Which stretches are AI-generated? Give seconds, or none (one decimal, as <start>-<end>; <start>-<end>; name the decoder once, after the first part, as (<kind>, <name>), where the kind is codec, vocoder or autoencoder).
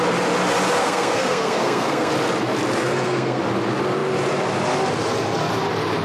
0.8-2.1 (codec, SNAC); 2.8-3.4